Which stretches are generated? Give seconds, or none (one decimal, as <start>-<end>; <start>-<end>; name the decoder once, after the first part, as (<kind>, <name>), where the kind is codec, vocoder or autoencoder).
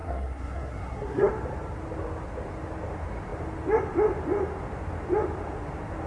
0.0-1.3 (codec, SNAC)